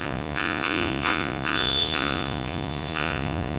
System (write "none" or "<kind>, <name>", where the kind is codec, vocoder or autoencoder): vocoder, Vocos